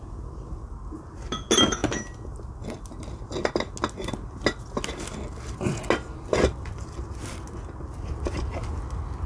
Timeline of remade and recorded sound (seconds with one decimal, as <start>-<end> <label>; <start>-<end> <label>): 0.0-9.3 recorded

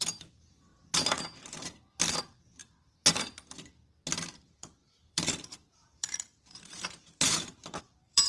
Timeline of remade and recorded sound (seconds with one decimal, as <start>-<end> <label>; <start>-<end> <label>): 0.0-0.7 remade; 0.7-2.2 recorded; 2.2-2.6 remade; 2.6-4.3 recorded; 4.3-8.3 remade

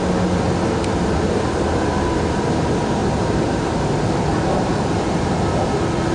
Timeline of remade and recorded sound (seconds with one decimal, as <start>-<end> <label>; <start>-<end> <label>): 0.0-3.0 recorded; 3.0-3.8 remade; 3.8-4.3 recorded; 4.3-5.3 remade; 5.3-6.1 recorded

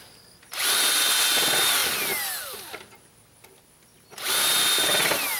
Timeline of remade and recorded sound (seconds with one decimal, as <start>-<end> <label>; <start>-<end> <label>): 0.0-5.4 recorded

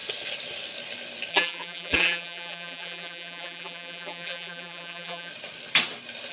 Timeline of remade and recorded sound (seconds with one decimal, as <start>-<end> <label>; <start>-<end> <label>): 0.0-1.3 recorded; 1.3-5.3 remade; 5.3-6.3 recorded

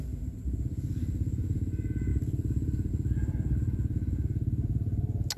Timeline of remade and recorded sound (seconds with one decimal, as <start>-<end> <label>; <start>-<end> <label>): 0.0-2.1 recorded; 2.1-2.9 remade; 2.9-5.4 recorded

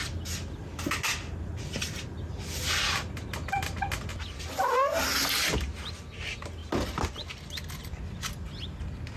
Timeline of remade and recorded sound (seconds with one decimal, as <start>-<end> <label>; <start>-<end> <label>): 0.0-9.2 recorded